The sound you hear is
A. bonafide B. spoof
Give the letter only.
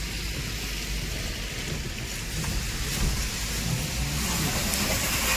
A